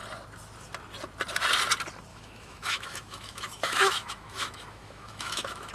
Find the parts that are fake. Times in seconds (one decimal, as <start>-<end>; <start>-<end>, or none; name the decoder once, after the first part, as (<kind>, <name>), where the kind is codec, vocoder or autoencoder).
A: 2.1-5.7 (autoencoder, DAC-VAE)